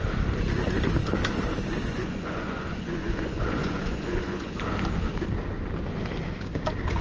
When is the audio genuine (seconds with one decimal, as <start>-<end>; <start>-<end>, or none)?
0.0-1.9; 4.5-7.0